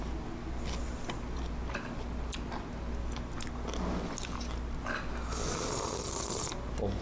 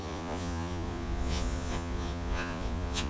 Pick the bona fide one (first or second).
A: first